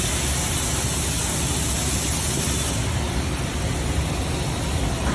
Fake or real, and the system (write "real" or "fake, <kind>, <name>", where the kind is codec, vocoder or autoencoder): real